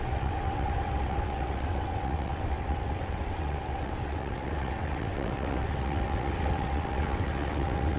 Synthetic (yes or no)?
yes